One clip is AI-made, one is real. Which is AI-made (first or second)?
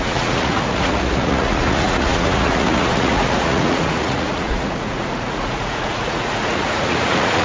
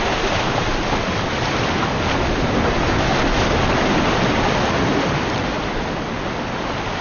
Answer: first